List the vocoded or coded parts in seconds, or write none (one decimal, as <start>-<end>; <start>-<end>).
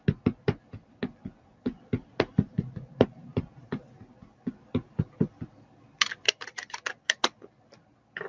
none